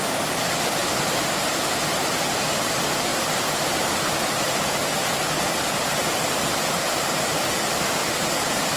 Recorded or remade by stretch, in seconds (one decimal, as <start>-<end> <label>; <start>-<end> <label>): 0.0-4.8 remade; 4.8-7.2 recorded; 7.2-8.0 remade; 8.0-8.8 recorded